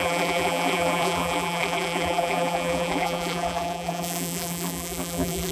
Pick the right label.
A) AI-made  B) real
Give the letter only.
A